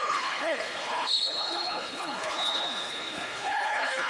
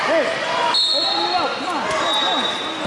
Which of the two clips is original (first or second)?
second